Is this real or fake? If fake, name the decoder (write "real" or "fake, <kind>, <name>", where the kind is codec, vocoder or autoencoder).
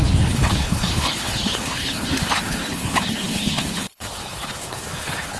fake, codec, HILCodec